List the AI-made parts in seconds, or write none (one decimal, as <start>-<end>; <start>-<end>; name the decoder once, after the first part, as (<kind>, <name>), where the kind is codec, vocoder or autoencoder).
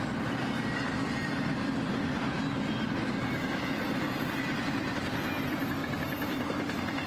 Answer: none